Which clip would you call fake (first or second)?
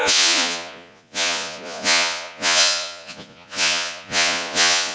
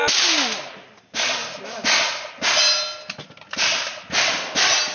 first